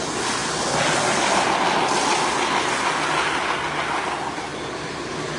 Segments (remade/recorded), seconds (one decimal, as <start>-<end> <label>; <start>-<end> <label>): 0.0-5.4 recorded